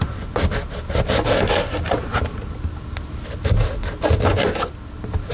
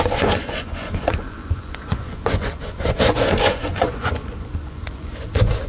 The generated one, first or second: second